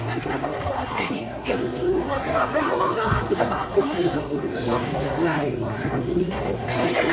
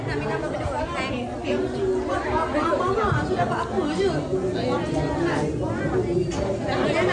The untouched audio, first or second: second